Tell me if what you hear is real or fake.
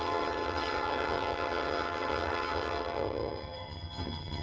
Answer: fake